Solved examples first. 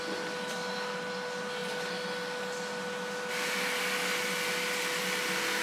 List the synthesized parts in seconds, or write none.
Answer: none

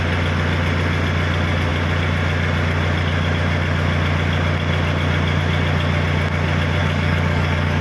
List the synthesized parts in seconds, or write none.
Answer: 6.8-7.8 (codec, DAC)

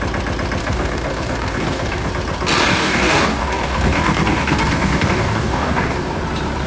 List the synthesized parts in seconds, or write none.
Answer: 0.6-2.1 (codec, DAC); 2.7-6.2

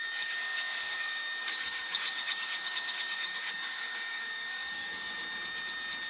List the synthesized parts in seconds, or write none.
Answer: 0.0-5.2 (codec, DAC)

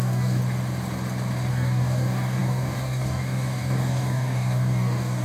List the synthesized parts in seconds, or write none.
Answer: 0.0-0.4 (codec, DAC); 1.5-5.2

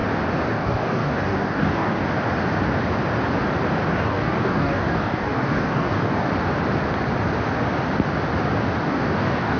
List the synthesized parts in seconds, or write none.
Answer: 0.5-2.0 (codec, DAC); 3.9-6.3; 8.8-9.6

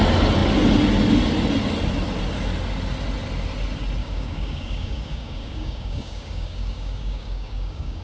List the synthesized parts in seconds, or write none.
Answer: 4.0-8.0 (codec, DAC)

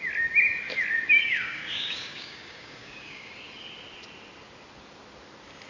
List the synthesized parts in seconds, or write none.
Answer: 1.2-3.3 (codec, DAC)